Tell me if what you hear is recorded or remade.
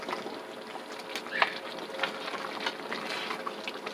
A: recorded